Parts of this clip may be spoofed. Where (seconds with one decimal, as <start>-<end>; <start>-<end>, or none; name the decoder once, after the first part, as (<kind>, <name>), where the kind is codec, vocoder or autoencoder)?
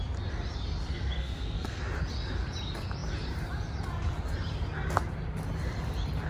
0.9-1.8 (codec, SNAC)